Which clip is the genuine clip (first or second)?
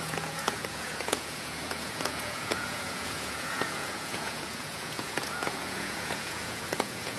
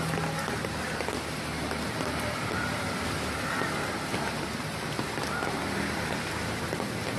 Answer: second